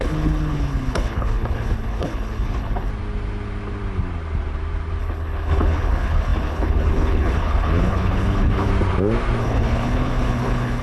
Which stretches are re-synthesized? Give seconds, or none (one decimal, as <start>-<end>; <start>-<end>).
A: 0.0-2.9; 5.0-8.7; 9.4-10.8